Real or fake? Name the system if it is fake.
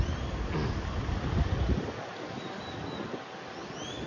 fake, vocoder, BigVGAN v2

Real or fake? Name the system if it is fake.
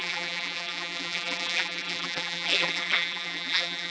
fake, vocoder, BigVGAN v2